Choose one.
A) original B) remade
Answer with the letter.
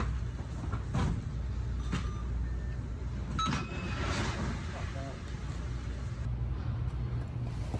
A